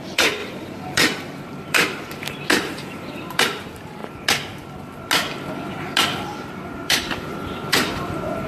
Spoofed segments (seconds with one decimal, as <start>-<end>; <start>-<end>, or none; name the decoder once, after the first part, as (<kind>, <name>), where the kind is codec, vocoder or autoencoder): 0.0-4.0 (vocoder, BigVGAN v2); 6.5-8.5